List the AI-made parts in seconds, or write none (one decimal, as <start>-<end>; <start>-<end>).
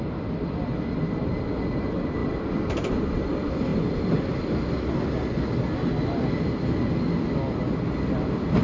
none